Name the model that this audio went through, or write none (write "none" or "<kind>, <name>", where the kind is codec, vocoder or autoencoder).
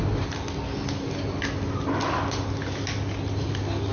none